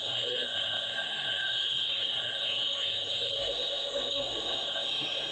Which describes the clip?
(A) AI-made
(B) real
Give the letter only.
A